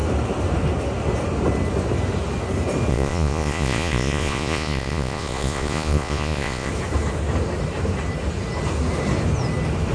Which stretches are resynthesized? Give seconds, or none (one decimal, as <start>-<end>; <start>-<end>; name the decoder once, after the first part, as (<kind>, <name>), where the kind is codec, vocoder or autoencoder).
2.9-6.7 (vocoder, Vocos)